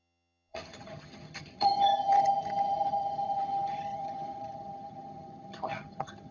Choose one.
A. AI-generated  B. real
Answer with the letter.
A